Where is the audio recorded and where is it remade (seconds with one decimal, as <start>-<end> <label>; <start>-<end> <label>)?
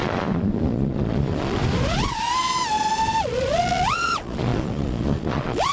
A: 0.0-1.6 remade; 1.6-3.2 recorded; 3.2-5.7 remade